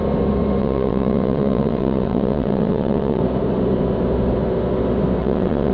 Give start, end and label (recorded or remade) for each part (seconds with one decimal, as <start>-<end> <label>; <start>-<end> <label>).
0.0-0.6 recorded; 0.6-3.2 remade; 3.2-5.2 recorded; 5.2-5.7 remade